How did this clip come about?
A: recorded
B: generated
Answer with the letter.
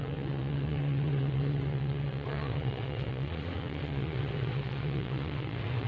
B